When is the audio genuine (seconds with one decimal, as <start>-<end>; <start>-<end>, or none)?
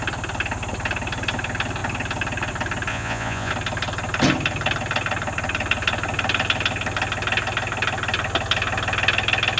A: 0.0-2.9; 3.5-9.6